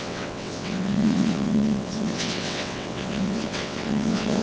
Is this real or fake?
fake